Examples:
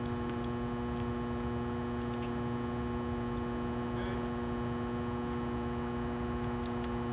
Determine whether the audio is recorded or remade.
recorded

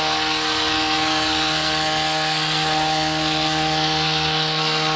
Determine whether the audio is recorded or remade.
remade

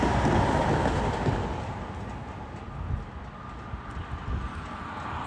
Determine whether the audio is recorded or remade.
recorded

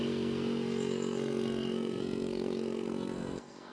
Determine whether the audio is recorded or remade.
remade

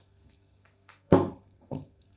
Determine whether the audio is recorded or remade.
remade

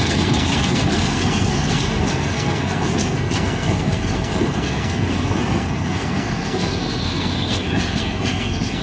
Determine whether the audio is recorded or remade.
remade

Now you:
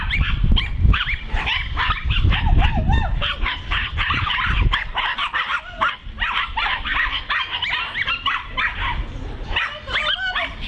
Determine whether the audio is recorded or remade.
recorded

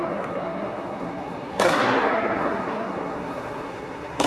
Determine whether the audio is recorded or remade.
remade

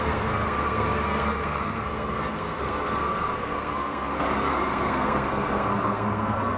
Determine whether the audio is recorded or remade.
remade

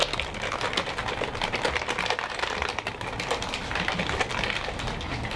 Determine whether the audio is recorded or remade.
recorded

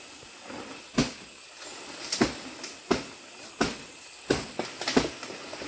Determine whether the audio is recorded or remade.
recorded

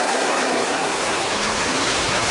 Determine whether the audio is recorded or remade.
remade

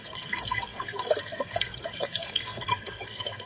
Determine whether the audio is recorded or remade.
remade